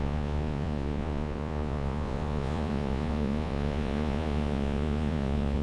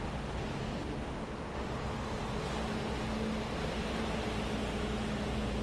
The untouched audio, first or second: second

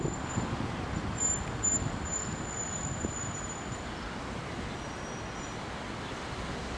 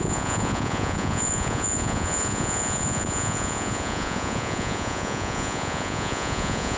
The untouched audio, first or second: first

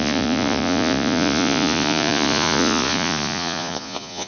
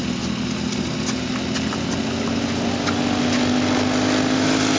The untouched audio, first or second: second